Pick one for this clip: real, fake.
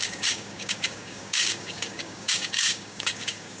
fake